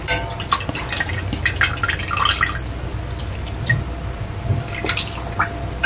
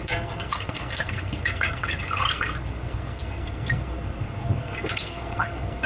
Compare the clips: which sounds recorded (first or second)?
first